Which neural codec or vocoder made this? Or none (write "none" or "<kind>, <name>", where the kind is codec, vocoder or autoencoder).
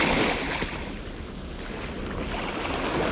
none